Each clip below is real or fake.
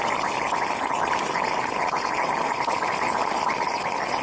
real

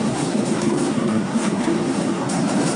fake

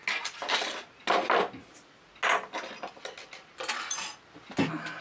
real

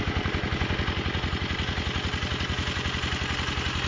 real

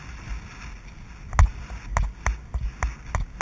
real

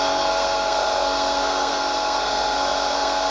fake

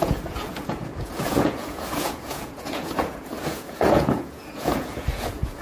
fake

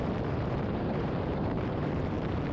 fake